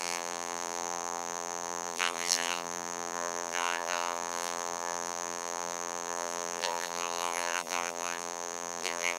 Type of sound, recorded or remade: remade